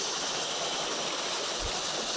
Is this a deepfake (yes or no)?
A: no